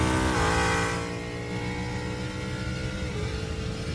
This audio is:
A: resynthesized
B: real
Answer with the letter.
B